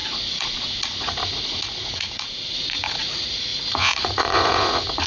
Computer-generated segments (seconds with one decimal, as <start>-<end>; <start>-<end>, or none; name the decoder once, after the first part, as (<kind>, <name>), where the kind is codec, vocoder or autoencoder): 0.0-5.1 (vocoder, Vocos)